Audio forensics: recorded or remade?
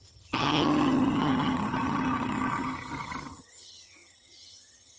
remade